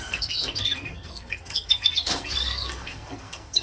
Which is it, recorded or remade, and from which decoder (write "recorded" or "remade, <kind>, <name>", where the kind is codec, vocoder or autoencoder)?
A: remade, codec, SNAC